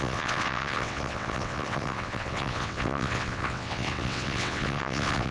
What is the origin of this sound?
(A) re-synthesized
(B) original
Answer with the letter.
A